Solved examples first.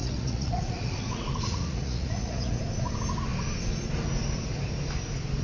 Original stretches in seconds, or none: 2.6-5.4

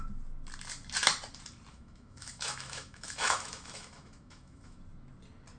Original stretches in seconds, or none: 0.0-1.7; 4.8-5.6

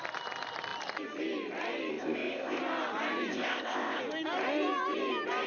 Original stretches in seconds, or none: 0.0-1.9; 2.6-3.3; 4.0-5.5

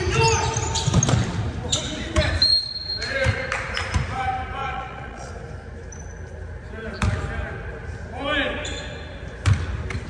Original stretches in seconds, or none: 0.0-4.6; 5.3-10.1

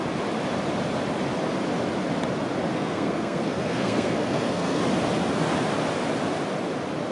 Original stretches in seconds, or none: 0.0-2.7; 4.8-7.1

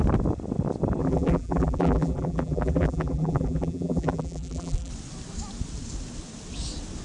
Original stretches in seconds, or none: 0.0-1.0; 4.9-7.0

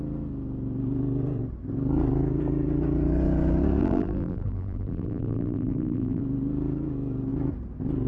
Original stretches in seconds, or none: 0.0-3.8; 6.2-8.1

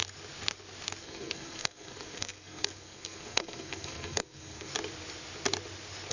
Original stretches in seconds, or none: 0.0-1.0; 4.7-6.1